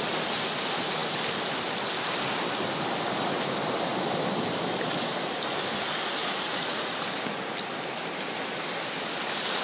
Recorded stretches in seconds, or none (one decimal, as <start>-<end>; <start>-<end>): 0.0-6.2; 6.9-9.6